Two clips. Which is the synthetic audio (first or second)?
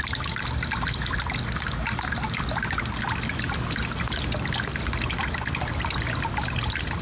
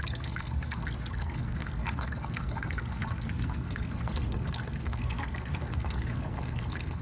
second